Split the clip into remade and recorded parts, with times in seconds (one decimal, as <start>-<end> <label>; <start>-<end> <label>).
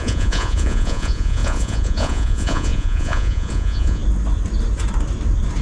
0.0-4.0 remade; 4.0-5.6 recorded